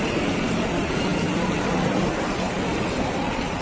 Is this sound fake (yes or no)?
no